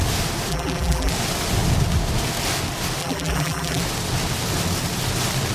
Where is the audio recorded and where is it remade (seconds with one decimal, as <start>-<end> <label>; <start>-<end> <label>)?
0.0-0.5 recorded; 0.5-1.1 remade; 1.1-3.0 recorded; 3.0-3.8 remade; 3.8-5.5 recorded

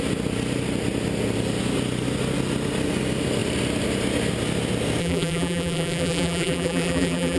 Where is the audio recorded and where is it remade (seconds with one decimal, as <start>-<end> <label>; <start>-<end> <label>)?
0.0-5.0 recorded; 5.0-7.4 remade

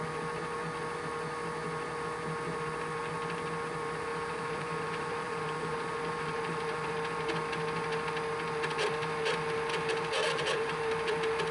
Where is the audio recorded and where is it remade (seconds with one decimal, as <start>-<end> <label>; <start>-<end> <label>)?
0.0-4.1 recorded; 4.1-6.9 remade; 6.9-10.2 recorded; 10.2-10.8 remade; 10.8-11.5 recorded

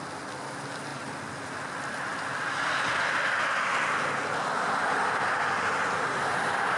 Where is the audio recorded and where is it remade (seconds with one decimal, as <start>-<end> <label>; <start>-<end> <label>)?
0.0-6.8 recorded

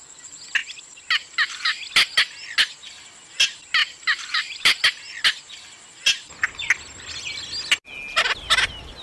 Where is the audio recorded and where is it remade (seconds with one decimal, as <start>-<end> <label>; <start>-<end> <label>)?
0.0-3.8 recorded; 3.8-4.8 remade; 4.8-9.0 recorded

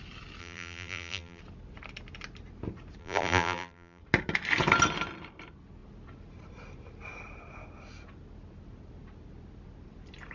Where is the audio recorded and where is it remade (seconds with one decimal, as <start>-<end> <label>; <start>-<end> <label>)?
0.0-0.4 recorded; 0.4-1.4 remade; 1.4-3.0 recorded; 3.0-4.0 remade; 4.0-10.3 recorded

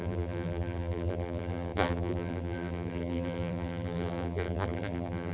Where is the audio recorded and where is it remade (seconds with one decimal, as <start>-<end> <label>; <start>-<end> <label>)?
0.0-5.3 remade